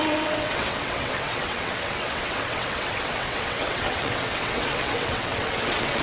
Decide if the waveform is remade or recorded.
remade